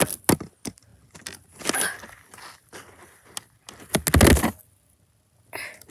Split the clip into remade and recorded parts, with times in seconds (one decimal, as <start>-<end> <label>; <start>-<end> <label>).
0.0-5.9 recorded